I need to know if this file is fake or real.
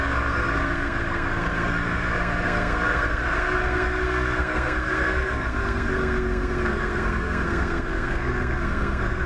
fake